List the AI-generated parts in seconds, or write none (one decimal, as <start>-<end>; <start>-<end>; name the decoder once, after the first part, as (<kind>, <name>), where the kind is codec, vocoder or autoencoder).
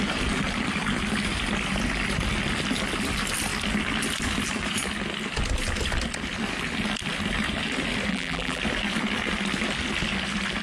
8.1-8.6 (vocoder, BigVGAN v2)